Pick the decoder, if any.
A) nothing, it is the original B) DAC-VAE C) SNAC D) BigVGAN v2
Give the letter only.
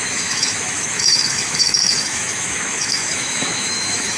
B